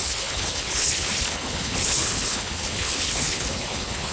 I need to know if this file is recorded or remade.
remade